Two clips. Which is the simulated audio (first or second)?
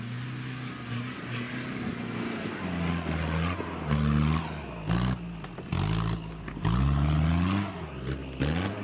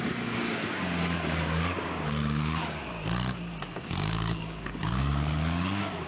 second